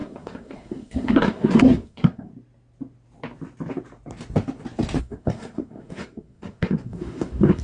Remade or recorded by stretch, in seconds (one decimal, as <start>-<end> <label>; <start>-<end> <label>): 0.0-2.3 remade; 2.3-5.0 recorded; 5.0-7.6 remade